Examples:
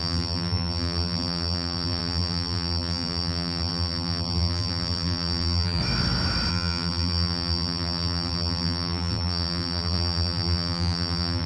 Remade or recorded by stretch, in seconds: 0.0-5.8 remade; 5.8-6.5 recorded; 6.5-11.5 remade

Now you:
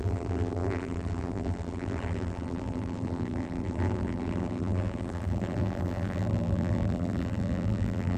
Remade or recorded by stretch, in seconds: 0.0-8.2 remade

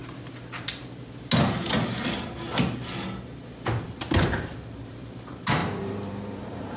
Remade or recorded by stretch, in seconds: 0.0-5.6 recorded; 5.6-6.8 remade

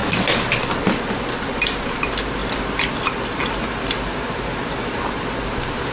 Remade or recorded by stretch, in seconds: 0.0-5.9 recorded

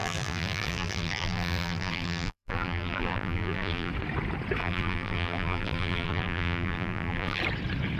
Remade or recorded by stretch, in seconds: 0.0-3.9 remade; 3.9-4.6 recorded; 4.6-7.4 remade; 7.4-8.0 recorded